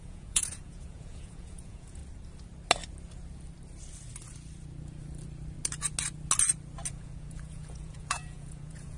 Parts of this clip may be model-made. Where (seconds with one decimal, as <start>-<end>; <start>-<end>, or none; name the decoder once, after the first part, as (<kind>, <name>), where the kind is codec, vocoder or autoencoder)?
0.0-2.0 (vocoder, Vocos); 6.9-9.0